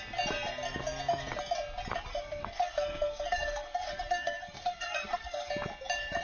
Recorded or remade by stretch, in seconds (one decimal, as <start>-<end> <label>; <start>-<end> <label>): 0.0-2.1 recorded; 2.1-5.5 remade; 5.5-6.2 recorded